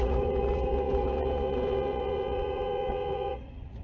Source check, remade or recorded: remade